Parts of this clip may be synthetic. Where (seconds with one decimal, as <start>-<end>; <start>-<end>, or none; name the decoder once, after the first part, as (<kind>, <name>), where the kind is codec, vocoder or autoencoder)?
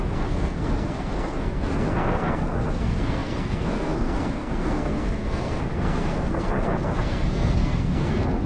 0.0-8.5 (codec, SNAC)